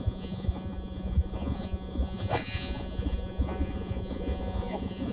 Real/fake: fake